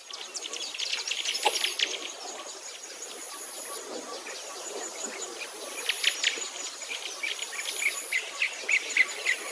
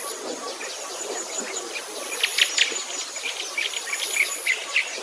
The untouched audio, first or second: second